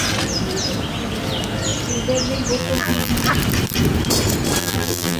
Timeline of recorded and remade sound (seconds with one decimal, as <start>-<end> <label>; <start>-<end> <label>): 0.0-2.6 recorded; 2.6-3.1 remade; 3.1-4.6 recorded; 4.6-5.2 remade